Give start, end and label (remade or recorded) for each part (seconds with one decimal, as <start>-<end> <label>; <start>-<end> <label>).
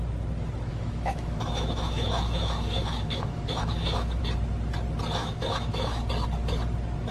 0.0-0.7 recorded; 0.7-4.2 remade; 4.2-5.2 recorded; 5.2-6.0 remade; 6.0-7.1 recorded